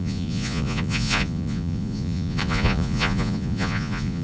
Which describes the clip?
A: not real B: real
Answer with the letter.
A